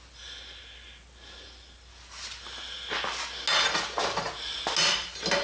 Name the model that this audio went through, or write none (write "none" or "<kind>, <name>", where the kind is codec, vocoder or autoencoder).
none